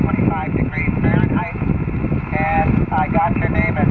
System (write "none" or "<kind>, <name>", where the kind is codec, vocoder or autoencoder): none